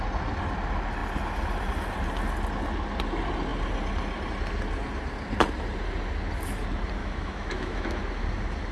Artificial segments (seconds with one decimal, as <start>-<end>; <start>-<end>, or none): 7.0-8.0